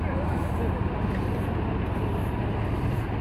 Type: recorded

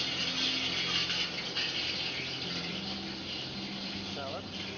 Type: recorded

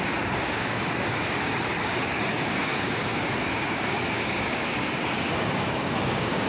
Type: remade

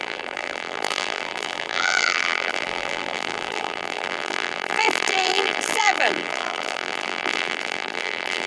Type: remade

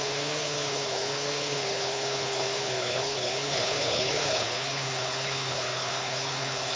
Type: remade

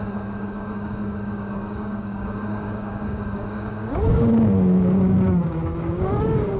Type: remade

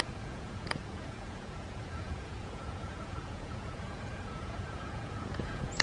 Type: remade